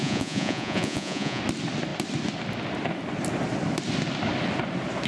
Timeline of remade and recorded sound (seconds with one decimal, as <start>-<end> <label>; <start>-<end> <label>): 0.0-1.4 remade; 1.4-5.1 recorded